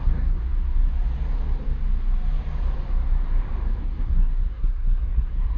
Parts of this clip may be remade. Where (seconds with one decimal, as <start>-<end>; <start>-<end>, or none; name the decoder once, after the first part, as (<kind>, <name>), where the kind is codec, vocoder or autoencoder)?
0.0-0.4 (codec, SNAC); 3.8-5.6